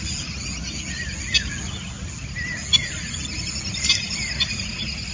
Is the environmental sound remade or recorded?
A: recorded